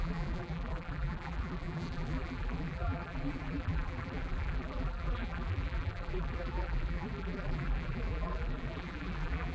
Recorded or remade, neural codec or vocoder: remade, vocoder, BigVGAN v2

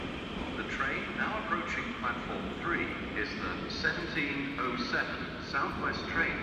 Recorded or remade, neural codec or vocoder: recorded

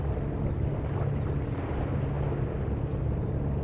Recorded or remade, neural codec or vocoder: recorded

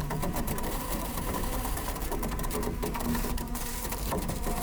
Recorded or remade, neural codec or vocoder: remade, vocoder, BigVGAN v2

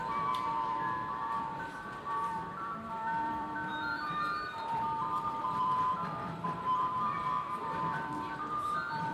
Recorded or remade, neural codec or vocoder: remade, vocoder, BigVGAN v2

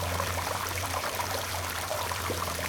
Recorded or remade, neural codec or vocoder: remade, vocoder, BigVGAN v2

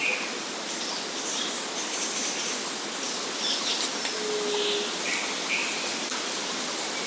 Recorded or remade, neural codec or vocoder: recorded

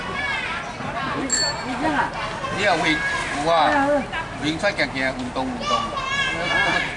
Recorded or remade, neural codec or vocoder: recorded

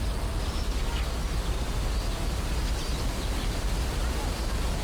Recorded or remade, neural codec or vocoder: recorded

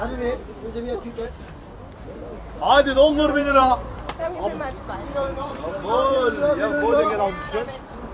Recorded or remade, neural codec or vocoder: remade, vocoder, BigVGAN v2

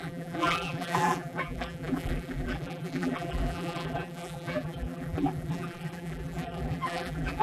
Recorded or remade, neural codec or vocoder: remade, vocoder, BigVGAN v2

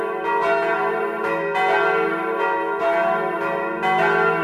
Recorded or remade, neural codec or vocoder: recorded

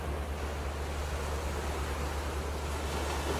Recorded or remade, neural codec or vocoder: recorded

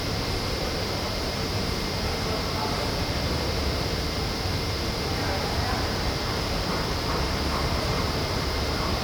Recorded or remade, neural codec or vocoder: remade, vocoder, BigVGAN v2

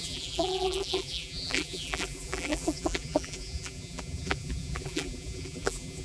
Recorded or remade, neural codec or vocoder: remade, vocoder, BigVGAN v2